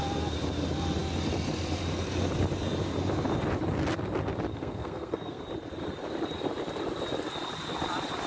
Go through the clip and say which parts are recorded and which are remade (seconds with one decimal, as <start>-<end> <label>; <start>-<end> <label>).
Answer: 0.0-4.5 recorded; 4.5-5.4 remade; 5.4-8.3 recorded